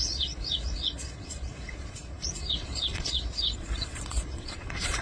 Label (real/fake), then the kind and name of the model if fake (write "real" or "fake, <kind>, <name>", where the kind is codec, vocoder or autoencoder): fake, vocoder, Vocos